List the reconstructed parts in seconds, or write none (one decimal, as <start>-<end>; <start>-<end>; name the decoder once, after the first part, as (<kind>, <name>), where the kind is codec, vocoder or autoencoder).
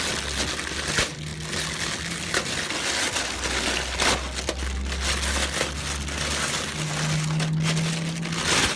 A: none